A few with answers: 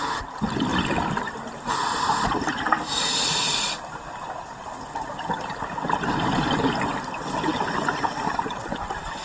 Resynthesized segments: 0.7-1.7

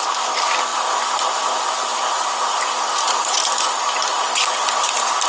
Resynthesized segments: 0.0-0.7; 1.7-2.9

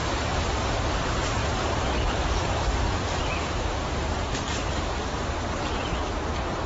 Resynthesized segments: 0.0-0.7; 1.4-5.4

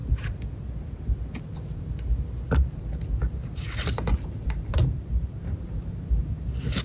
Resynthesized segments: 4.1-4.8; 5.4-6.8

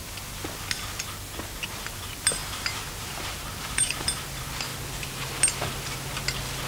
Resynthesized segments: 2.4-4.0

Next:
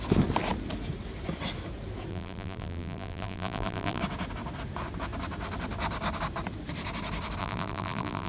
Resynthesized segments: 2.1-4.0; 7.4-8.3